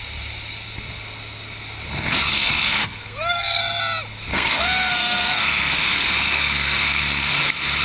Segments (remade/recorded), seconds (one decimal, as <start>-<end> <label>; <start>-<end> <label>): 0.0-2.3 recorded; 2.3-3.6 remade; 3.6-4.3 recorded; 4.3-7.0 remade; 7.0-7.8 recorded